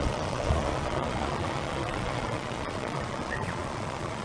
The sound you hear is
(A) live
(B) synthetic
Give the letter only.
B